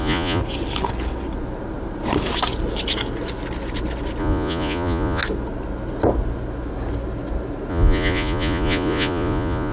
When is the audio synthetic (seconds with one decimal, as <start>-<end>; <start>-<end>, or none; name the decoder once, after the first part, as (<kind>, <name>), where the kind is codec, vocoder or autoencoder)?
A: 0.0-0.4 (vocoder, Vocos); 4.2-5.2; 7.7-9.7